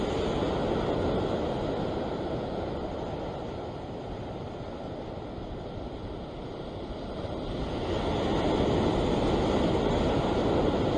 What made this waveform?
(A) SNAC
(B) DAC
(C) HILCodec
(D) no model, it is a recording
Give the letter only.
D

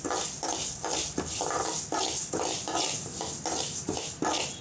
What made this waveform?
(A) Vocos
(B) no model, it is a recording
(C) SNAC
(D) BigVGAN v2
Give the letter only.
B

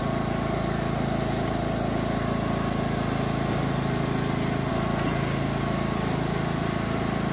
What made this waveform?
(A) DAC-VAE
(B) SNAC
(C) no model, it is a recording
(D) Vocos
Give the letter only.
C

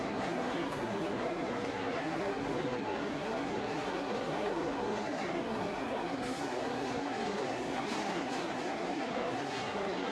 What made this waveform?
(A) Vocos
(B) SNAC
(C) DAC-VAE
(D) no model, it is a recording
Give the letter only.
B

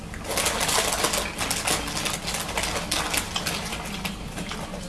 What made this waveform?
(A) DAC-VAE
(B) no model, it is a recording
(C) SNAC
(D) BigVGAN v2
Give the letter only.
B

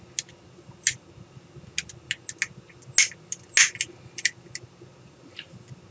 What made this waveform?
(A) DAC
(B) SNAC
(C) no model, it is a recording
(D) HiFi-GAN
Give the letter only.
C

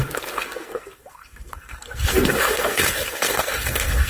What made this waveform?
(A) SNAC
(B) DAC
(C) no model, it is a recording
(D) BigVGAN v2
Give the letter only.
A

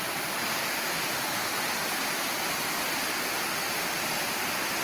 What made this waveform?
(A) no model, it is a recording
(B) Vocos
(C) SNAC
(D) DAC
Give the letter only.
A